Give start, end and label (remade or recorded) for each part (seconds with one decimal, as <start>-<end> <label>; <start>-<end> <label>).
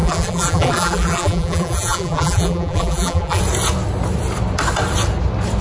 0.0-3.4 remade; 3.4-5.6 recorded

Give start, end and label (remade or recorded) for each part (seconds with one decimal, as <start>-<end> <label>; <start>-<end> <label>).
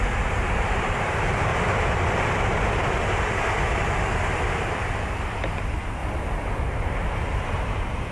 0.0-1.5 remade; 1.5-5.3 recorded; 5.3-6.0 remade; 6.0-6.6 recorded; 6.6-8.1 remade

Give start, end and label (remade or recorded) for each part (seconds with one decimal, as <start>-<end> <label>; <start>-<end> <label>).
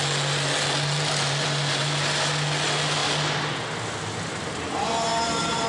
0.0-5.7 recorded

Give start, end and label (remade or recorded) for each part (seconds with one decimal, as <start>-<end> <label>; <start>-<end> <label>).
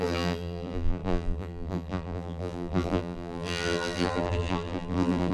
0.0-5.3 remade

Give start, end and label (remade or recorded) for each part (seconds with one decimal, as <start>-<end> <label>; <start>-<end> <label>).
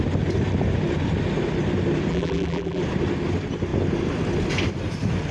0.0-2.1 recorded; 2.1-2.8 remade; 2.8-5.3 recorded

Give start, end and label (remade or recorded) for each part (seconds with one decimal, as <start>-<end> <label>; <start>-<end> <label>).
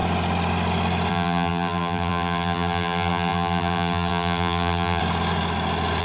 0.0-1.1 recorded; 1.1-5.0 remade; 5.0-6.0 recorded